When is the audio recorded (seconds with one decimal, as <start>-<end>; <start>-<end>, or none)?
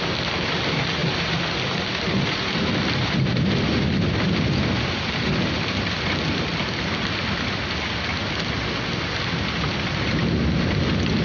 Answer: 0.0-11.2